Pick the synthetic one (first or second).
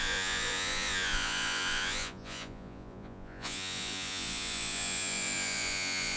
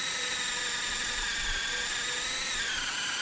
first